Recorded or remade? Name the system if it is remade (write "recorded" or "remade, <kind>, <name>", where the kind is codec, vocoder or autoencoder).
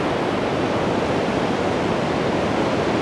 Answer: recorded